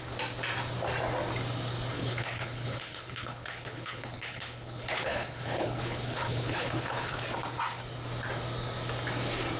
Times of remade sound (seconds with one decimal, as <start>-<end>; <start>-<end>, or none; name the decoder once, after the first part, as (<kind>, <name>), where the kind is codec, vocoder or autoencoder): 1.9-7.2 (codec, HILCodec)

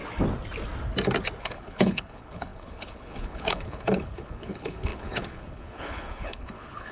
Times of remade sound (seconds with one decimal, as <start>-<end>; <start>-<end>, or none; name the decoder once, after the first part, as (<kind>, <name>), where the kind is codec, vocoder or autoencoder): 1.4-6.9 (codec, HILCodec)

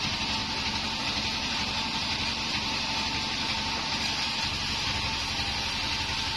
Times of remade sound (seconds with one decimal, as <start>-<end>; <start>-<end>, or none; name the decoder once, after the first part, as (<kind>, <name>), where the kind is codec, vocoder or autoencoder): none

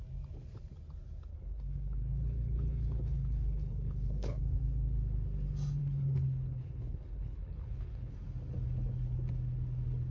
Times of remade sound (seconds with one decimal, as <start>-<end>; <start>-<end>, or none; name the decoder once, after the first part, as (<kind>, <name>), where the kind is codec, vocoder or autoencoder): 1.3-4.4 (codec, HILCodec); 5.8-8.1